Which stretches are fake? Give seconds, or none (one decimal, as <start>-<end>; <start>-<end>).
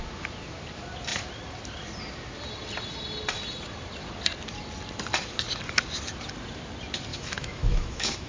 7.1-8.3